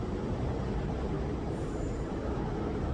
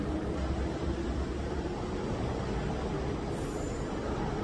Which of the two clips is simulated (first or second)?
first